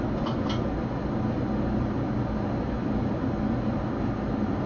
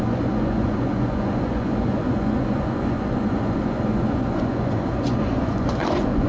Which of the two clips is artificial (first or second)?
second